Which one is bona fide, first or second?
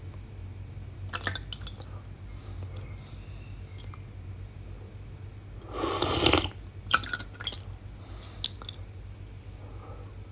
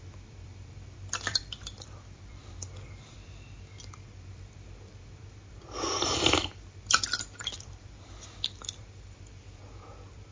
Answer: first